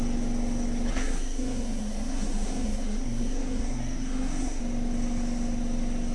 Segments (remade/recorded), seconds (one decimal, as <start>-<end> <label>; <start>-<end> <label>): 0.0-0.9 recorded; 0.9-4.6 remade; 4.6-6.1 recorded